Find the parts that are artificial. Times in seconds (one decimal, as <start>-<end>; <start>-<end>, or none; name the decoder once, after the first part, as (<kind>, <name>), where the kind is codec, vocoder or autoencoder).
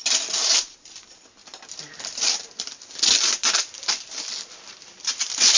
0.5-1.4 (vocoder, BigVGAN v2); 4.8-5.6